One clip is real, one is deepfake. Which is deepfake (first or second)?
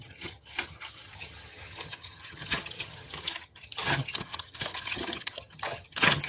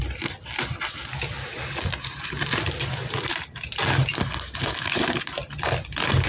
first